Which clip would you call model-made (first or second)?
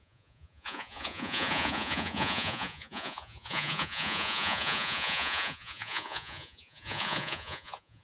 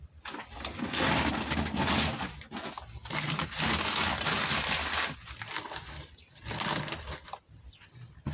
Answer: first